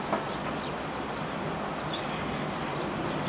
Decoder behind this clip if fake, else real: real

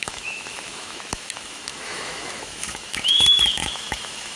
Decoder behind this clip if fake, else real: fake, autoencoder, DAC-VAE